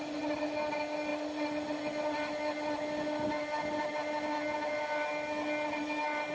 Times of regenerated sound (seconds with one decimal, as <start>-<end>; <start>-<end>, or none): none